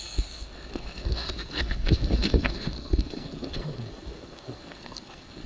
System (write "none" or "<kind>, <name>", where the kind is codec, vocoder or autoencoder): codec, SNAC